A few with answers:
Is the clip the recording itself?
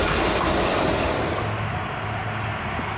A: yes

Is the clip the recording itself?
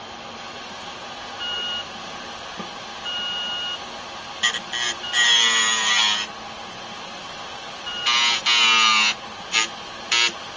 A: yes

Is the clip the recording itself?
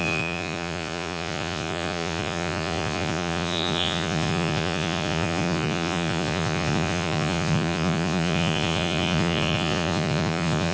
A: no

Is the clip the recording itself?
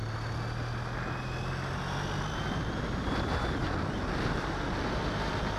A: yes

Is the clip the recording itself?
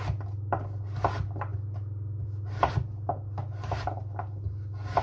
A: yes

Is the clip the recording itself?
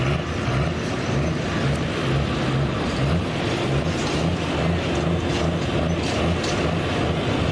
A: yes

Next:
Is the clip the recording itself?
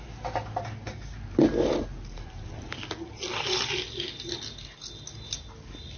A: yes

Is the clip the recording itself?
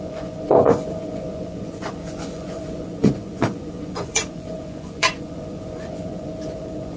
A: no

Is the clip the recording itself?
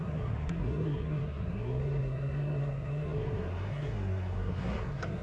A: no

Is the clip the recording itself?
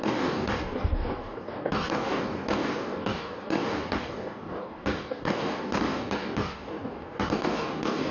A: no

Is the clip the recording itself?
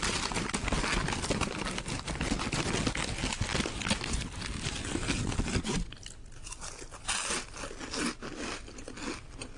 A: yes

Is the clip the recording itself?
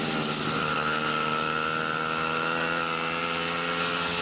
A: yes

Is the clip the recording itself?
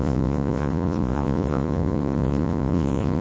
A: no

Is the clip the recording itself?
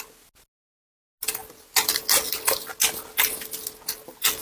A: yes